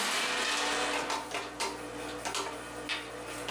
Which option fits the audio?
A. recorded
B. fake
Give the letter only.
A